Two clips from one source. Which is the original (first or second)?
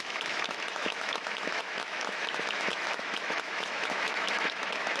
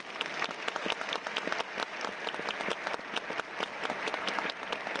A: second